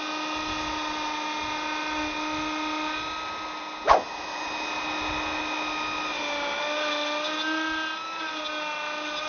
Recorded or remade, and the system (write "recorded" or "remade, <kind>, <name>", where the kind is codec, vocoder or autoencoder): recorded